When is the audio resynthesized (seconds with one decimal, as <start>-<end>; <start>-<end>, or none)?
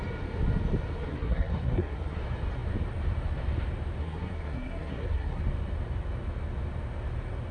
1.1-2.2; 4.0-5.4